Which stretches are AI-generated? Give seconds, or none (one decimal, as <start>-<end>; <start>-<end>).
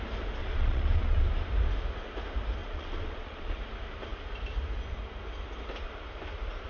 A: 0.4-1.2; 2.6-3.6